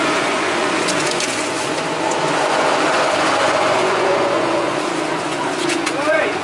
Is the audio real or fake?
fake